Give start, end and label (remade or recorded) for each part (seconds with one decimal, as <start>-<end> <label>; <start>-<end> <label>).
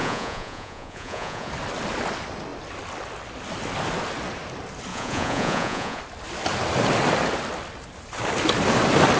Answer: 0.0-1.5 remade; 1.5-4.9 recorded; 4.9-6.0 remade; 6.0-9.2 recorded